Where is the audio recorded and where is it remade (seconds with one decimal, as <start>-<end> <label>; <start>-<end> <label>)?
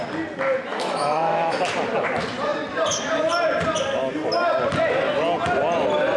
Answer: 0.0-0.7 recorded; 0.7-1.6 remade; 1.6-6.2 recorded